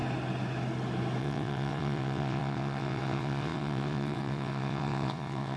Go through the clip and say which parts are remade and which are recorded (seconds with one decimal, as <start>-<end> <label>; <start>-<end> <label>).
0.0-1.2 recorded; 1.2-5.6 remade